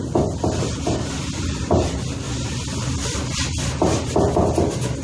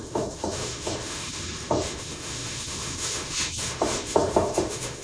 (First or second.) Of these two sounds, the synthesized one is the second